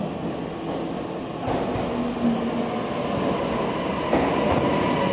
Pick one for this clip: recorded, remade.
recorded